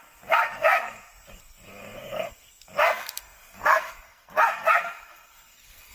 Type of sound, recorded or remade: remade